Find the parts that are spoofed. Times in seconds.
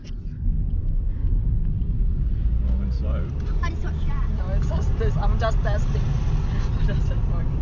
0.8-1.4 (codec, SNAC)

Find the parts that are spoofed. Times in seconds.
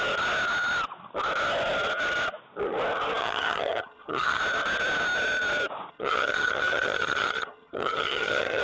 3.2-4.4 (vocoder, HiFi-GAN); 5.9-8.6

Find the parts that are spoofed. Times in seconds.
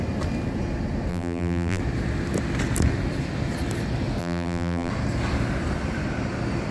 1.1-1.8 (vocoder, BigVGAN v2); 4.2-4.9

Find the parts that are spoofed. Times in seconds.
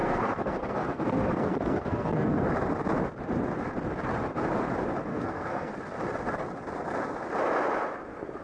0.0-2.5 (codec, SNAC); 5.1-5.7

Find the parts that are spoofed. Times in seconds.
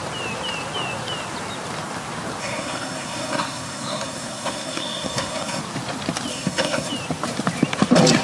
2.4-5.6 (codec, SNAC); 6.3-6.9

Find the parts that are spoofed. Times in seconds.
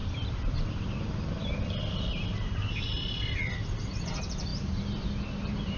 0.0-0.9 (vocoder, BigVGAN v2); 1.4-2.2; 4.5-5.8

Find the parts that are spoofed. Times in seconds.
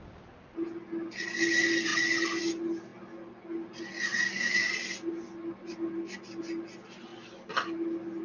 none